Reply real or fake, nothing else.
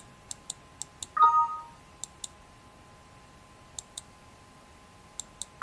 real